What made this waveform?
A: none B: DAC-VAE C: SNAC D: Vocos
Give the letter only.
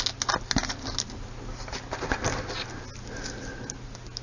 A